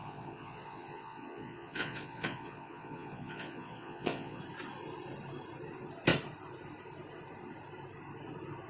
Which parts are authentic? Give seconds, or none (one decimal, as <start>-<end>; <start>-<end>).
4.4-8.7